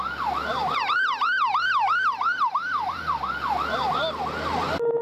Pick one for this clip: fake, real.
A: real